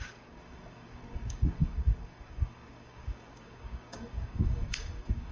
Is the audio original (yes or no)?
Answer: no